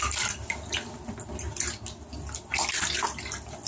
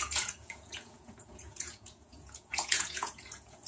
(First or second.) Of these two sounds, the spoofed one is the second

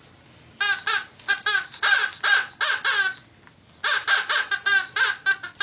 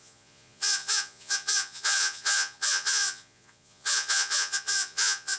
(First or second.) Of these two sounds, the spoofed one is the second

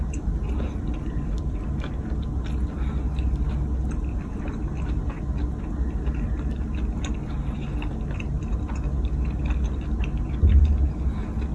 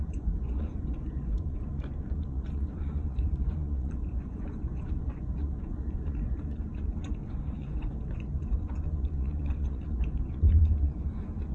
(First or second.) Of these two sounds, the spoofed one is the second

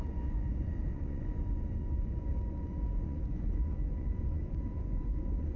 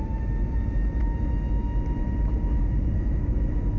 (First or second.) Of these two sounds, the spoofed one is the first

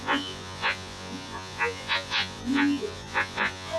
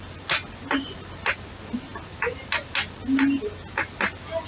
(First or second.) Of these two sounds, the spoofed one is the first